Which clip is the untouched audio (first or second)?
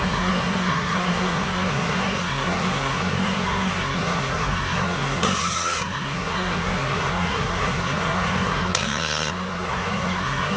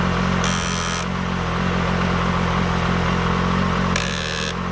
second